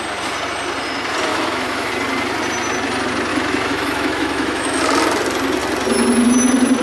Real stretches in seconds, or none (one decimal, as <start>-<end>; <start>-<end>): 0.0-1.3; 1.9-3.3; 4.8-6.8